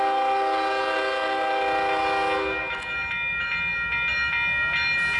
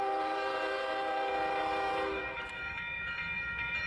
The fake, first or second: second